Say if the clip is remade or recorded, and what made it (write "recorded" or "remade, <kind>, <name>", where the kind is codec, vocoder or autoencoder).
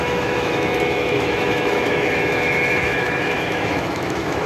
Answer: remade, autoencoder, DAC-VAE